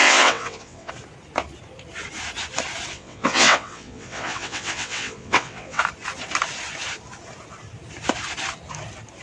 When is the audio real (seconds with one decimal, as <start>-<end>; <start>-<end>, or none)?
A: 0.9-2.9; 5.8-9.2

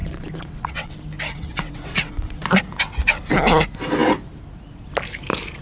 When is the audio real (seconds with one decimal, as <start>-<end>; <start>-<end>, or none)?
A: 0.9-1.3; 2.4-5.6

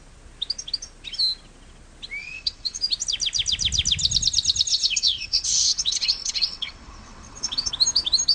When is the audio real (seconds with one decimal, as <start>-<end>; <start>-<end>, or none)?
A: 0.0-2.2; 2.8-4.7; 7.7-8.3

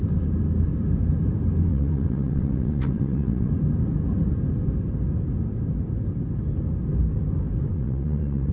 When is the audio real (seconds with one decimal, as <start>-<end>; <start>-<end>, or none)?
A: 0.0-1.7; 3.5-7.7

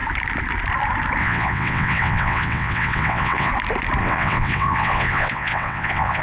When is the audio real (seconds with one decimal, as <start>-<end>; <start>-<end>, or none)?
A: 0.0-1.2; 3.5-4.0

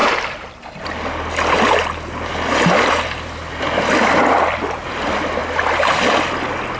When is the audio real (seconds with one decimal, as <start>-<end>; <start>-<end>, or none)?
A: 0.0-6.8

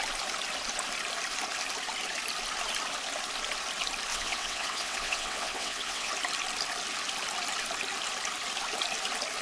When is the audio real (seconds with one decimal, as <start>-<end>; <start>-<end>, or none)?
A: 0.0-4.1; 6.1-9.4

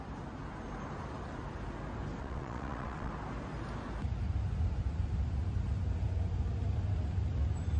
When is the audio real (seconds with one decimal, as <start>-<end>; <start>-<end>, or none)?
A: 0.0-2.2; 3.1-7.8